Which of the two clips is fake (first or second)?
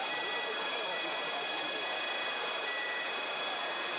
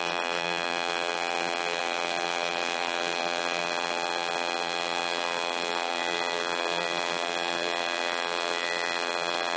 second